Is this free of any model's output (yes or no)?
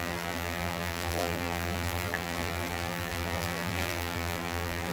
no